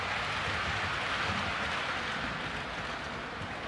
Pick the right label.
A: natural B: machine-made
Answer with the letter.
A